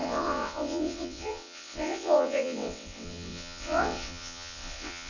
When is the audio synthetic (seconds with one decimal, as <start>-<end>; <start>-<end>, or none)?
0.0-5.1